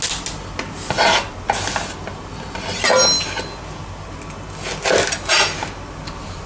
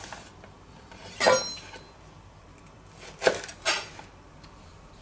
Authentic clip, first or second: first